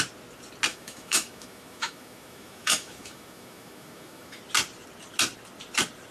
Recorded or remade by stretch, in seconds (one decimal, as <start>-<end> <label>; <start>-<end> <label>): 0.0-0.7 recorded; 0.7-4.4 remade; 4.4-6.1 recorded